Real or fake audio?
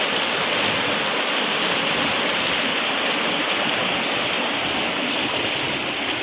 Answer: real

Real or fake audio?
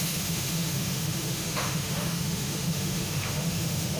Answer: fake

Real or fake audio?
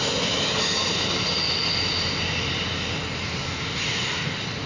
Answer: real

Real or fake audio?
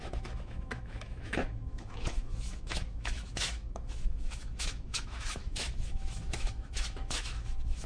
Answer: fake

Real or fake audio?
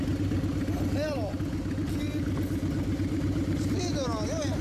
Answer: real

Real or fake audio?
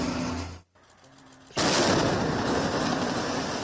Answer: real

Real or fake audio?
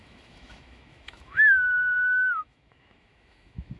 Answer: fake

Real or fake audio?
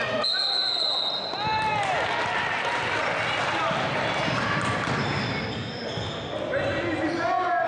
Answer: real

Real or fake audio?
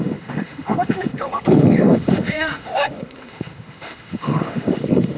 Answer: fake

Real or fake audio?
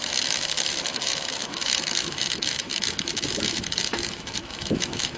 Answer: fake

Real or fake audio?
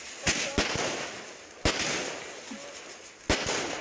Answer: real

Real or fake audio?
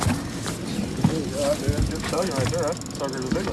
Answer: real